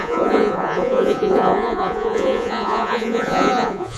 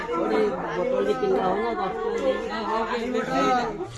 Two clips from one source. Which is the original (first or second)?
second